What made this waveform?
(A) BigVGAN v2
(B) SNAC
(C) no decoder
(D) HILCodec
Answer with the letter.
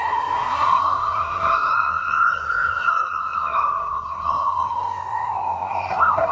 B